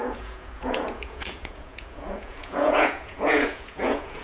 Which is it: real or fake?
fake